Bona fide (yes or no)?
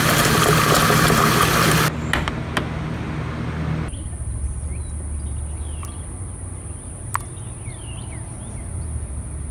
yes